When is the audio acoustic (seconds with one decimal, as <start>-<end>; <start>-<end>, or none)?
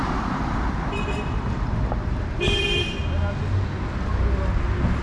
3.0-5.0